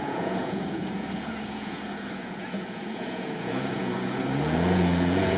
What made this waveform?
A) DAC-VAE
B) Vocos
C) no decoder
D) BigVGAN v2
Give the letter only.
B